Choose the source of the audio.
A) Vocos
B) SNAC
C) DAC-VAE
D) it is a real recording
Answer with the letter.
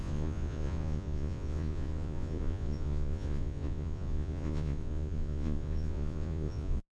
A